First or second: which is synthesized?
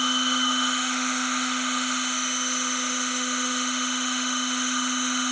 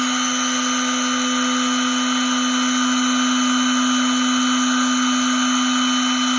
first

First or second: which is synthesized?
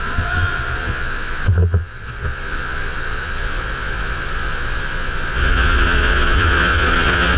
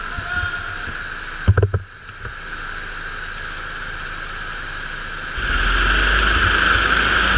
first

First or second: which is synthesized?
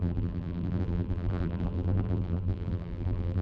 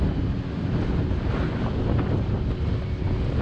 first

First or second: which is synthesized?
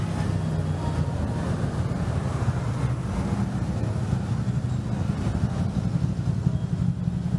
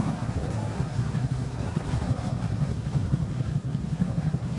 second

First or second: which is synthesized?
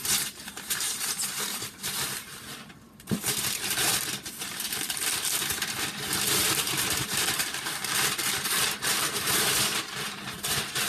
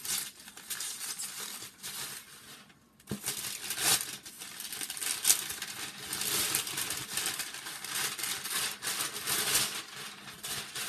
first